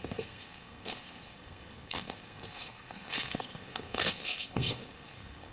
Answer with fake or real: fake